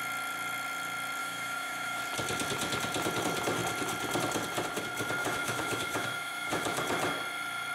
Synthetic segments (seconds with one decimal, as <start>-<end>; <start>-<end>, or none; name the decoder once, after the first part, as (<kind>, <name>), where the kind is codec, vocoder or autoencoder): 1.2-2.0 (autoencoder, DAC-VAE); 5.2-6.8